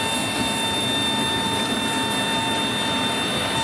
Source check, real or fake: real